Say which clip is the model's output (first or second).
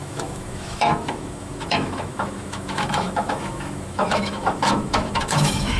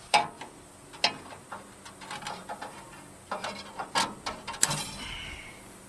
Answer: first